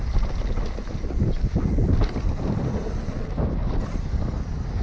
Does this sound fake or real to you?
real